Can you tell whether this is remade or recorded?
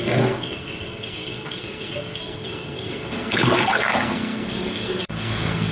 remade